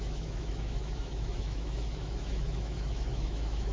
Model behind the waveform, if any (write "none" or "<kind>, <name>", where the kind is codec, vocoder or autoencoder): autoencoder, DAC-VAE